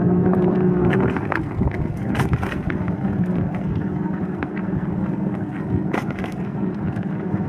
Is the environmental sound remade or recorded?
remade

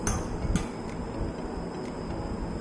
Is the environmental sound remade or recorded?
recorded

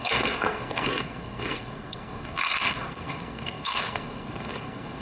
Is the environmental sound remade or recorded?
remade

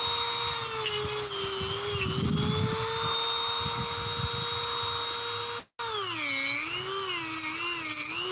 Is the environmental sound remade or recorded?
recorded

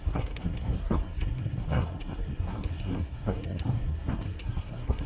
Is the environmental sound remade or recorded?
remade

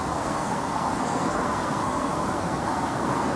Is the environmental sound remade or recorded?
remade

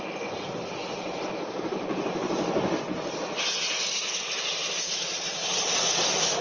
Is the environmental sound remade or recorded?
recorded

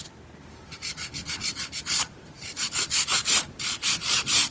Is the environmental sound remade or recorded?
recorded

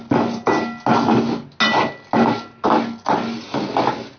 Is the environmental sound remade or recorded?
recorded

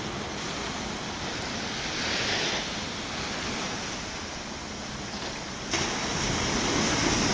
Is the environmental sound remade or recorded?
recorded